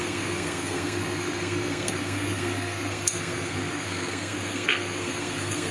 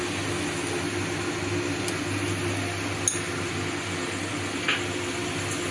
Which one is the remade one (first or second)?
first